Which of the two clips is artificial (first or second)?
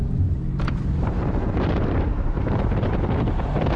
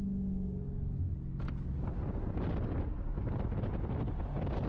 first